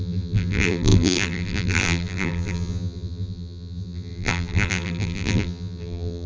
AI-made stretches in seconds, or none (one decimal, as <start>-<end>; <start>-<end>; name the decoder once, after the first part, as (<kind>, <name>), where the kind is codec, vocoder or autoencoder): 0.0-6.3 (vocoder, BigVGAN v2)